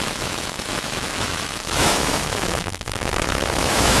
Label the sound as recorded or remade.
remade